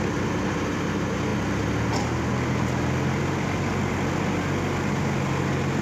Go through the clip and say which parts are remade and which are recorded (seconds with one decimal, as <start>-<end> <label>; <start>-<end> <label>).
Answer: 0.0-5.8 recorded